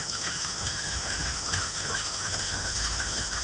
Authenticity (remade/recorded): remade